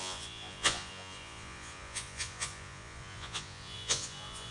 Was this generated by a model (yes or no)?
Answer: yes